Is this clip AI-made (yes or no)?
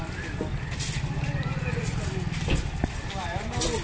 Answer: no